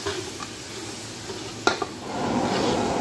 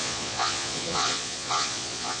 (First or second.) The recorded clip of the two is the first